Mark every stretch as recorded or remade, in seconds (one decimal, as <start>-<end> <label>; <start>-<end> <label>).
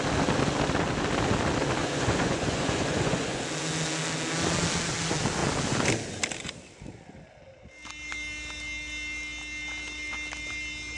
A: 0.0-1.8 recorded; 1.8-3.4 remade; 3.4-11.0 recorded